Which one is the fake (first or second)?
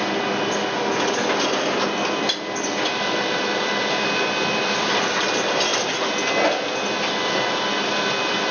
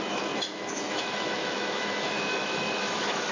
second